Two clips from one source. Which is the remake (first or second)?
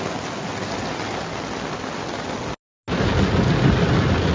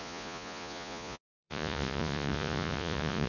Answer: second